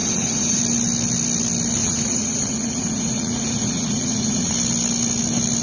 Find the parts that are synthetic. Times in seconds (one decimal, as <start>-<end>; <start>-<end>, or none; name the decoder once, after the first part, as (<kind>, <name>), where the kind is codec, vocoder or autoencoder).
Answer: 0.0-0.6 (vocoder, Vocos); 1.8-4.5